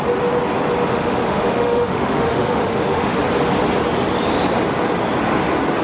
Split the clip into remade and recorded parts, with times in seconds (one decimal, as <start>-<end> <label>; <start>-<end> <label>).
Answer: 0.0-0.9 recorded; 0.9-3.2 remade; 3.2-5.8 recorded